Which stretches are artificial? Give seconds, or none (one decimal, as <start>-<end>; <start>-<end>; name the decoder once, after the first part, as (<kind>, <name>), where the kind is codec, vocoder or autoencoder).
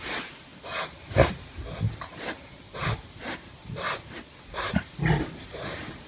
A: 2.8-6.1 (vocoder, BigVGAN v2)